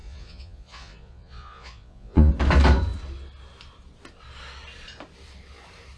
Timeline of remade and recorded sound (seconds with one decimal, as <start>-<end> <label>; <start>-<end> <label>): 0.0-2.3 remade; 2.3-6.0 recorded